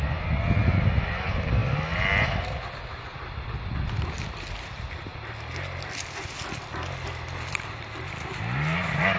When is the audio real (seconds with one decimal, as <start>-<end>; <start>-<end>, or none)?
0.0-9.2